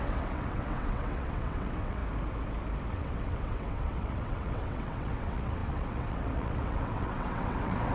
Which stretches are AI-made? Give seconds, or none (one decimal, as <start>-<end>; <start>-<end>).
0.0-2.0; 2.9-7.9

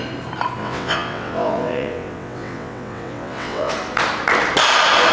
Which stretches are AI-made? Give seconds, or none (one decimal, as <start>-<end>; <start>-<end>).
0.6-3.7